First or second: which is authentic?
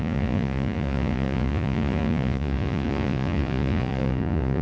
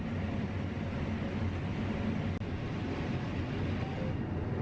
second